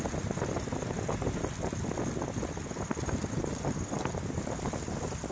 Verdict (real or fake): real